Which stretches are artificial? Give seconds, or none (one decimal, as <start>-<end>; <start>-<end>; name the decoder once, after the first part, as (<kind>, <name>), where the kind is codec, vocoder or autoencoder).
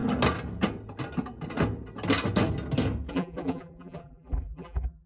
3.1-5.1 (vocoder, BigVGAN v2)